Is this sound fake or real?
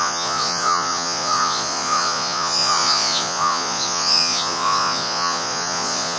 fake